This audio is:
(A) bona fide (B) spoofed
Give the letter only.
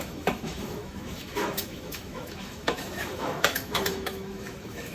B